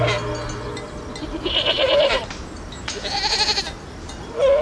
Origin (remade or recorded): recorded